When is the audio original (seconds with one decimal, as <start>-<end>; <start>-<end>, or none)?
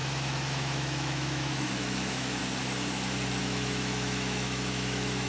2.4-3.4